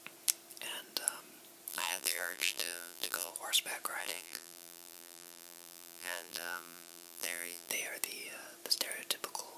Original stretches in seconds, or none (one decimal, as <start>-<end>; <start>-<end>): 0.0-1.7; 3.3-4.0; 7.7-9.6